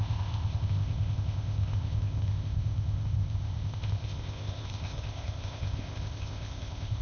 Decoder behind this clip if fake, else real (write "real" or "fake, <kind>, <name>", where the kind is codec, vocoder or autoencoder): fake, codec, ZipCodec